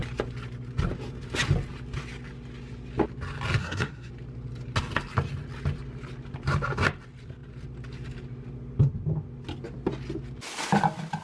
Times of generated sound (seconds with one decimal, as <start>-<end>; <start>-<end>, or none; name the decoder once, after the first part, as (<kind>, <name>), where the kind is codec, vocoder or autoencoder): 3.6-4.1 (codec, SNAC)